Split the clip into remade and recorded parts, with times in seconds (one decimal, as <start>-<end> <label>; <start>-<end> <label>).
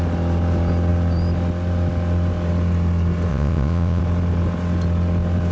0.0-3.3 recorded; 3.3-4.0 remade; 4.0-5.5 recorded